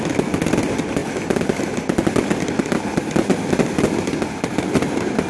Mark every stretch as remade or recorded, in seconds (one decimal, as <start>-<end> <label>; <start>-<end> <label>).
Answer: 0.0-5.3 recorded

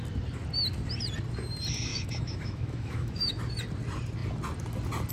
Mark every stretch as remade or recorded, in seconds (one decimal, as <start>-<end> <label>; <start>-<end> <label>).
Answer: 0.0-1.9 recorded; 1.9-3.3 remade; 3.3-5.1 recorded

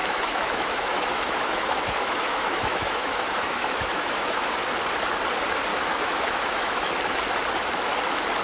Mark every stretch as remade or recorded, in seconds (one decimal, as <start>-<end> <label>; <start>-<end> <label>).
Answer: 0.0-4.6 remade; 4.6-5.7 recorded; 5.7-6.9 remade; 6.9-8.4 recorded

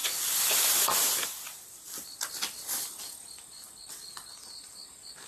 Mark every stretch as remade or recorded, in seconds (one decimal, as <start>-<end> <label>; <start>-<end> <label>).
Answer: 0.0-5.3 recorded

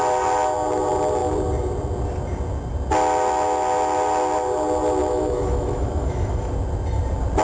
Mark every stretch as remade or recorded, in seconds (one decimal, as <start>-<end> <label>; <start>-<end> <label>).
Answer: 0.0-5.0 recorded; 5.0-6.5 remade; 6.5-7.4 recorded